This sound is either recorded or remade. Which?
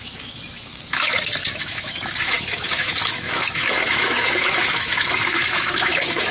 remade